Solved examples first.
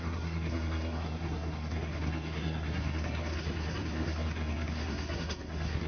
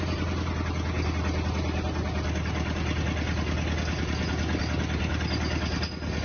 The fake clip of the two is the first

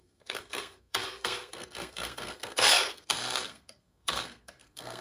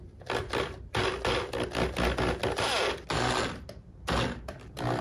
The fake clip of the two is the first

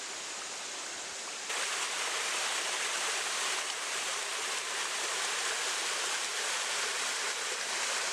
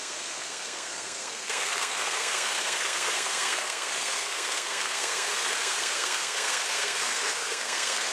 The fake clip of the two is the second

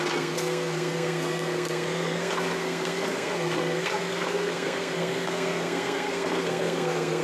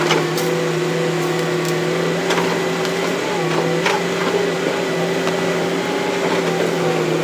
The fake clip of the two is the first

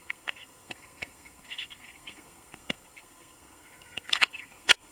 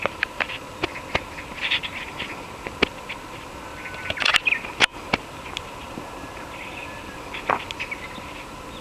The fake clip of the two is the first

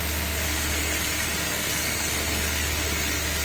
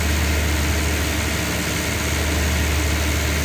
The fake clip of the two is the first